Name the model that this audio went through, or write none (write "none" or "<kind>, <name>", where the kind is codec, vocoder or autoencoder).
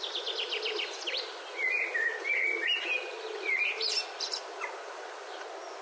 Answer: none